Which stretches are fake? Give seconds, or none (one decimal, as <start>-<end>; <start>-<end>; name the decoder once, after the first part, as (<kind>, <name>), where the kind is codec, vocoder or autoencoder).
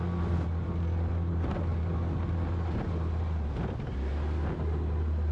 none